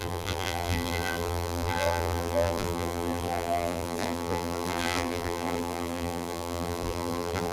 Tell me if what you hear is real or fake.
fake